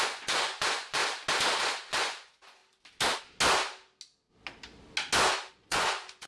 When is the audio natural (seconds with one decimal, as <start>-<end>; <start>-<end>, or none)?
1.0-1.6; 2.6-5.5